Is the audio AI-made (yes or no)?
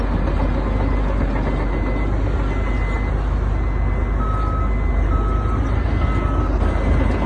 no